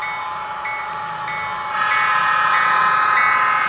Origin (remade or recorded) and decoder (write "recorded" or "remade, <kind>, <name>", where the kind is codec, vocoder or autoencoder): recorded